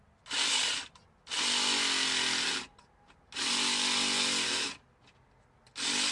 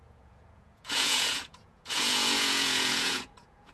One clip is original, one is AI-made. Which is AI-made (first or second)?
second